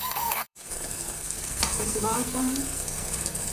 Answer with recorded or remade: remade